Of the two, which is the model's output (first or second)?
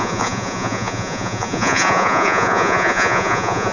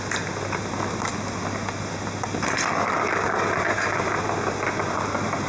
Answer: first